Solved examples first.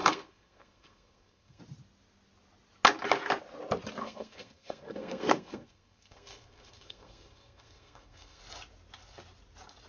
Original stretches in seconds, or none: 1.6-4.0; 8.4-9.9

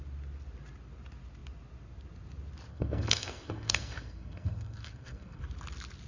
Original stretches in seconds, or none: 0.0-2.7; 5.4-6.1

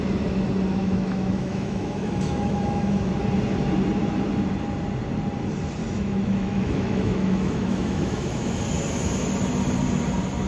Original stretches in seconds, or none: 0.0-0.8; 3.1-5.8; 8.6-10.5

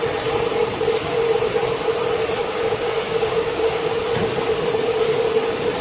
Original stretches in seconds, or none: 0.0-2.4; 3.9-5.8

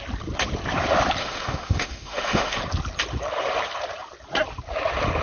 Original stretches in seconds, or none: 0.0-1.2; 2.6-5.2